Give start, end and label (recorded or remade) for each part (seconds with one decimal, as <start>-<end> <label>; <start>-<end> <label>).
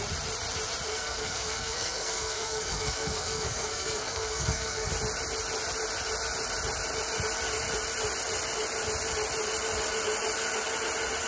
0.0-0.9 recorded; 0.9-4.9 remade; 4.9-11.3 recorded